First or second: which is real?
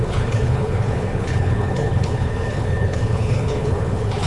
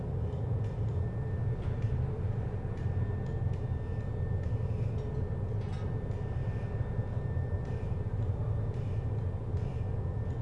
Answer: second